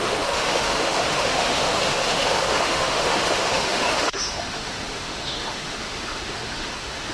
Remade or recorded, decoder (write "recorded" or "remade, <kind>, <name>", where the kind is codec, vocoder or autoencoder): remade, autoencoder, DAC-VAE